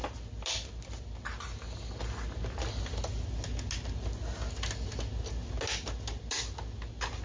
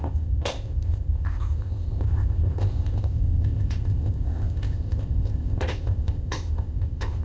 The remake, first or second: second